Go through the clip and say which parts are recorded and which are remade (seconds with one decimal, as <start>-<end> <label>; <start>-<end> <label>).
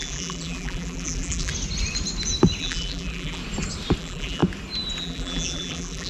0.0-1.5 remade; 1.5-2.6 recorded; 2.6-3.4 remade; 3.4-4.0 recorded; 4.0-4.4 remade; 4.4-5.0 recorded; 5.0-6.1 remade